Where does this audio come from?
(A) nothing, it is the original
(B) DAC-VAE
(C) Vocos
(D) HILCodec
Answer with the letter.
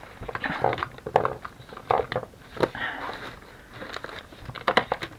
A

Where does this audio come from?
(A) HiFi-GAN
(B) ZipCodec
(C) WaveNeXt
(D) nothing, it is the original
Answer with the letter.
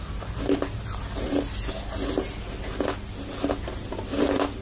D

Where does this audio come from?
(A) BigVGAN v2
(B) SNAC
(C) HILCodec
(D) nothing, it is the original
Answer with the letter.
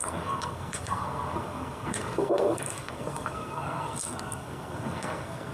B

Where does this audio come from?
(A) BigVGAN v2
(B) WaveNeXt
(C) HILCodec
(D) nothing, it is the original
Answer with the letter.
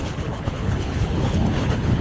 C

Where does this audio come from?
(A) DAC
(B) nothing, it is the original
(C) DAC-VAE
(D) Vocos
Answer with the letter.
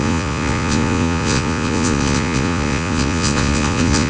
D